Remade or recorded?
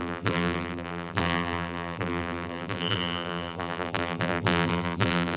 remade